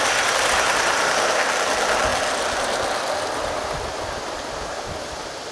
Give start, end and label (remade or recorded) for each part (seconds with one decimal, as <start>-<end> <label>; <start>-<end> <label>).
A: 0.0-5.5 recorded